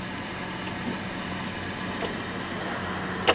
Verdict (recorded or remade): recorded